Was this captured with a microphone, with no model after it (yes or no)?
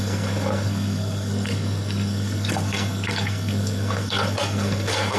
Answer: no